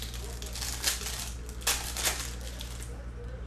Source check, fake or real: real